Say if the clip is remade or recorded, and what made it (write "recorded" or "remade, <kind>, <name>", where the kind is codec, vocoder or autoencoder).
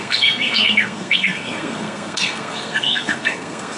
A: remade, codec, SNAC